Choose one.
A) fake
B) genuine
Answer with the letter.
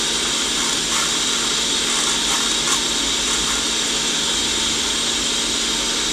B